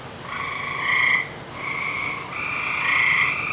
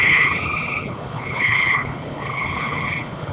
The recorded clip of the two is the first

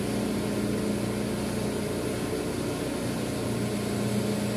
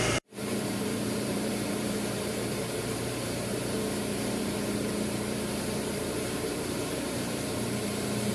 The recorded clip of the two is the first